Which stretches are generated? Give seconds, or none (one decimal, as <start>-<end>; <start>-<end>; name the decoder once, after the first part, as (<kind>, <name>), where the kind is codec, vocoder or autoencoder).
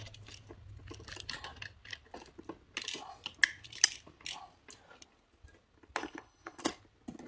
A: 6.0-6.6 (codec, HILCodec)